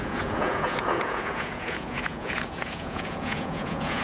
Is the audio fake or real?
fake